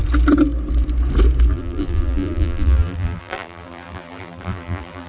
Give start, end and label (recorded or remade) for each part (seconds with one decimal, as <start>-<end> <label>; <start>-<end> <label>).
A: 0.0-1.5 recorded; 1.5-5.1 remade